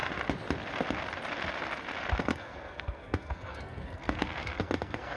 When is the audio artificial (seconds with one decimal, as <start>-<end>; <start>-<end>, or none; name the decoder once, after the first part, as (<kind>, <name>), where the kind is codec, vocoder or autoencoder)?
2.2-5.2 (codec, SNAC)